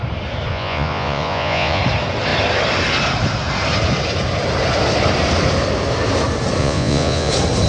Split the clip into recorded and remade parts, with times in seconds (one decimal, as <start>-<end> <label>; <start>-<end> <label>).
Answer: 0.0-0.5 recorded; 0.5-1.8 remade; 1.8-6.6 recorded; 6.6-7.3 remade; 7.3-7.7 recorded